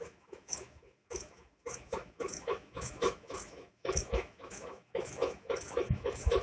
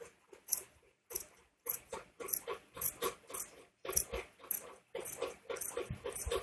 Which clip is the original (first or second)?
second